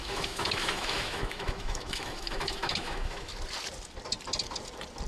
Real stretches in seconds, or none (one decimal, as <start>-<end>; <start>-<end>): 3.3-5.1